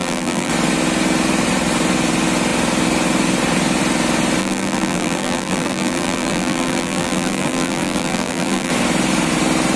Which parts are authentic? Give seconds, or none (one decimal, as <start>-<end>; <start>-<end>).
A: 0.5-4.4; 8.7-9.8